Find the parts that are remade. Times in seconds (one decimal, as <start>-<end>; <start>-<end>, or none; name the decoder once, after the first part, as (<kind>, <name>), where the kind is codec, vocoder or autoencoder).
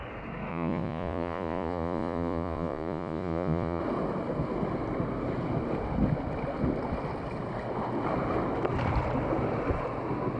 0.5-3.8 (vocoder, Vocos)